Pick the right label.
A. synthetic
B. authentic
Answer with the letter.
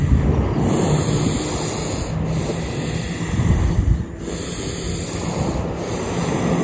B